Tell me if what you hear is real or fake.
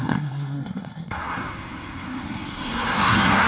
fake